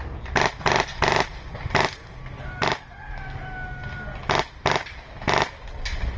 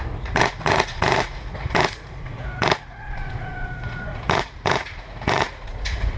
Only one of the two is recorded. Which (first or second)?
first